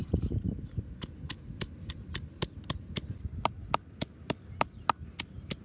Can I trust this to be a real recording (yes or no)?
yes